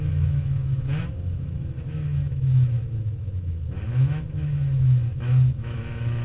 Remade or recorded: remade